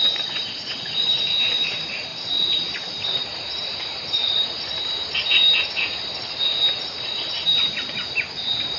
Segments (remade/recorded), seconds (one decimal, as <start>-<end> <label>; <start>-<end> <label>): 0.0-8.8 remade